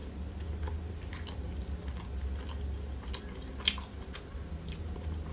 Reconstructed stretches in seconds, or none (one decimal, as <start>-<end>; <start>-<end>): none